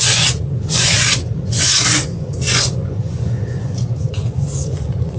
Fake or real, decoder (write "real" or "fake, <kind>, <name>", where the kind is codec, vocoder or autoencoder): fake, vocoder, Vocos